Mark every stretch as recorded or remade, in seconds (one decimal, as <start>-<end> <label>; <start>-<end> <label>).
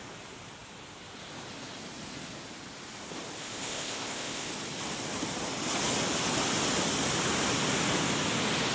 0.0-3.4 recorded; 3.4-4.5 remade; 4.5-8.7 recorded